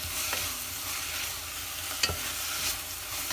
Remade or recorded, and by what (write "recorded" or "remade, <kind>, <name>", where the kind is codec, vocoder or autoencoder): recorded